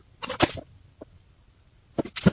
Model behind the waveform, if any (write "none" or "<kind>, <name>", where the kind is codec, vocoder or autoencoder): none